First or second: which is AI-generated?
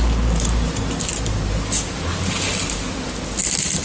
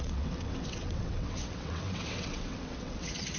second